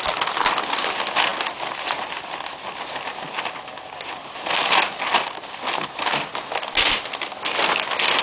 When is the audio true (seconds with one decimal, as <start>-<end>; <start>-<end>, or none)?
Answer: 0.0-8.2